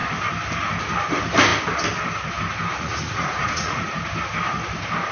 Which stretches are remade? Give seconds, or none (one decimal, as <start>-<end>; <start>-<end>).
2.7-3.9